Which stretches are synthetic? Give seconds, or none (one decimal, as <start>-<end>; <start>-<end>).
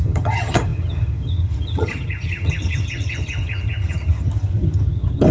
0.0-5.3